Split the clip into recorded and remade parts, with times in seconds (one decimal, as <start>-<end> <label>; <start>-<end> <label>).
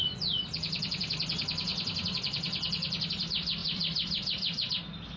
0.0-1.7 recorded; 1.7-3.1 remade; 3.1-3.6 recorded; 3.6-4.7 remade; 4.7-5.2 recorded